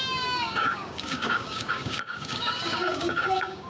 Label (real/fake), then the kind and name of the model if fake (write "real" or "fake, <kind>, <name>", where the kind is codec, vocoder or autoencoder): fake, codec, DAC